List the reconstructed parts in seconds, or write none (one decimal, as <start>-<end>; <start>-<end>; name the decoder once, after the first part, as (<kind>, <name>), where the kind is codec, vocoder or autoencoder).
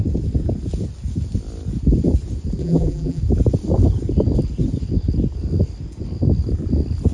2.6-3.2 (vocoder, BigVGAN v2)